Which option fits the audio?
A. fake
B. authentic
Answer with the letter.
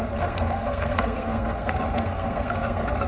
A